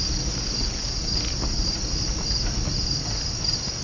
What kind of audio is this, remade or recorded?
recorded